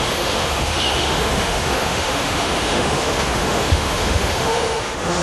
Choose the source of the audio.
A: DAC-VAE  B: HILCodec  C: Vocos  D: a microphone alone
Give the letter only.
A